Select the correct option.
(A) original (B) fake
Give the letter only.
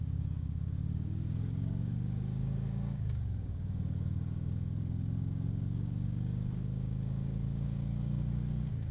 B